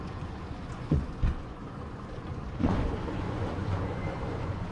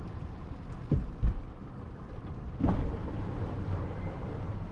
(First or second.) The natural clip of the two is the second